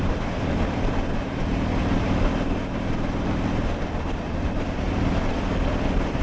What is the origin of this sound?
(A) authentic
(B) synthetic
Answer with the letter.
A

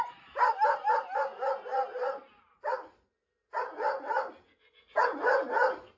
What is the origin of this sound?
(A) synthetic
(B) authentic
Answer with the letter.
B